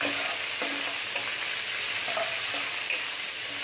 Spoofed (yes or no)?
no